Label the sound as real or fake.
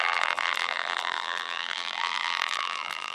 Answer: fake